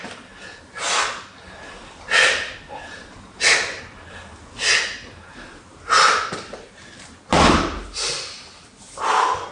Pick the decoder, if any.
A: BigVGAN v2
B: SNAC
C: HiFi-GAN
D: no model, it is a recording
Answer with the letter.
D